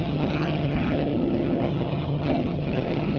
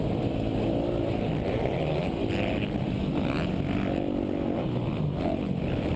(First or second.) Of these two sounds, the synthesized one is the first